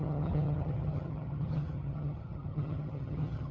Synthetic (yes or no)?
yes